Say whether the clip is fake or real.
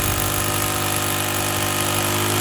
real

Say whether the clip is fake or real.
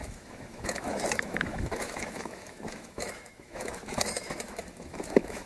fake